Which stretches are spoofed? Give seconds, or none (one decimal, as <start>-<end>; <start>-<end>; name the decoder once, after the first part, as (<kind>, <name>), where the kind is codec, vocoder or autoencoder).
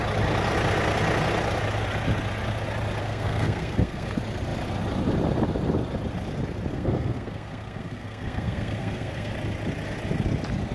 3.0-4.1 (codec, SNAC); 6.7-9.3